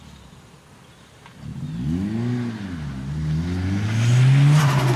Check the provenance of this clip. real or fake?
real